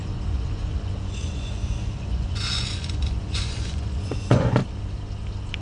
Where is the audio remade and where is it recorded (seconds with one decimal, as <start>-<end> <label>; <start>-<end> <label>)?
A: 0.0-4.6 remade; 4.6-5.6 recorded